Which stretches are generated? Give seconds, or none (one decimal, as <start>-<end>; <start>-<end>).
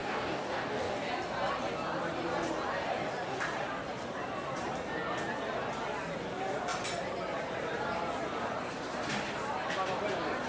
0.0-1.1